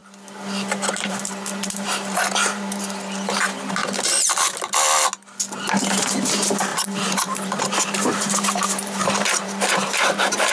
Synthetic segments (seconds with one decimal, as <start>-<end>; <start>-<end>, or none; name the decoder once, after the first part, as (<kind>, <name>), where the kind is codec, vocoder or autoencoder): 0.9-3.8 (vocoder, BigVGAN v2); 5.8-10.5